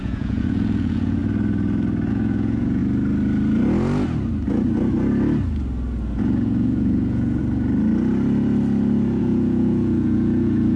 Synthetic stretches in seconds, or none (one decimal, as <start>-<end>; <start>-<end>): 0.0-1.2; 2.1-2.8; 6.1-7.4; 9.2-10.8